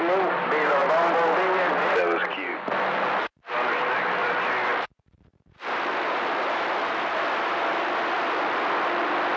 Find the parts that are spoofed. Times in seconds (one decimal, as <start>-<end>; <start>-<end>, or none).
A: none